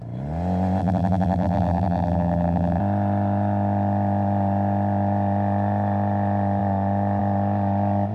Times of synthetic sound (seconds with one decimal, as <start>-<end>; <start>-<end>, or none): 0.8-2.8